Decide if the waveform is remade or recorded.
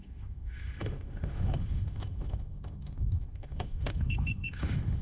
remade